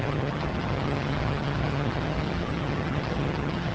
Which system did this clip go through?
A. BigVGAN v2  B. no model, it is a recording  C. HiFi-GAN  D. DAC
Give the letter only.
C